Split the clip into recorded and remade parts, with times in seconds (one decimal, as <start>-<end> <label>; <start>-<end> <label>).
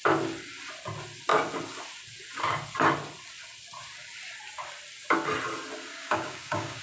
0.0-5.9 recorded; 5.9-6.8 remade